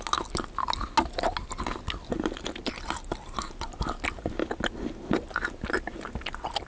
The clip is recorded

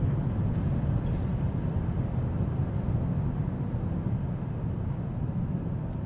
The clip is recorded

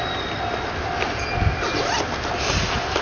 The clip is recorded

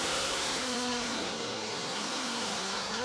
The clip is remade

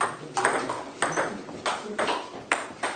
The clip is recorded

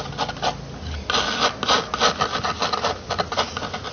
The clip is recorded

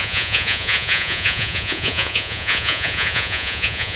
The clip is remade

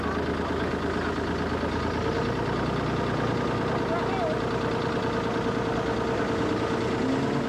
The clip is recorded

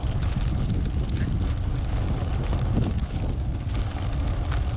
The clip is recorded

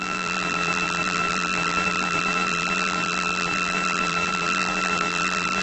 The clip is remade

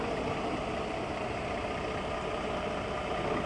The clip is recorded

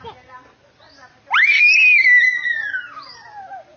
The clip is recorded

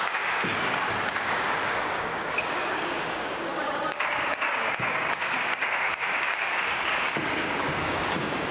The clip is remade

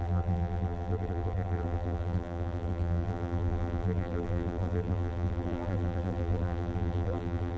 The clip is remade